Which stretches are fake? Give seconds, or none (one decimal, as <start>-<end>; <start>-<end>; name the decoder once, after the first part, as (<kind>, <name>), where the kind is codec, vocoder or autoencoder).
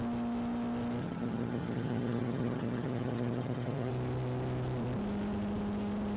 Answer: 1.0-3.9 (vocoder, HiFi-GAN)